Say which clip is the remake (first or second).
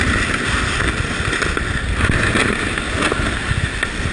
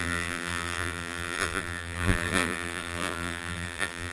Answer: second